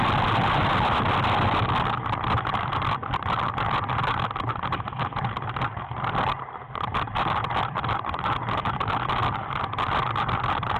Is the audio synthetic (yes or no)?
no